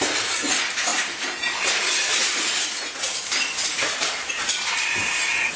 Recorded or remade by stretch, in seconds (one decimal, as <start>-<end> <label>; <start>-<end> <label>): 0.0-0.9 recorded; 0.9-4.3 remade; 4.3-5.6 recorded